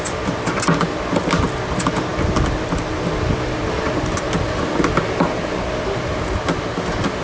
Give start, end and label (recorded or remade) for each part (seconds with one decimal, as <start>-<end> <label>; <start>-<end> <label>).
0.0-7.2 recorded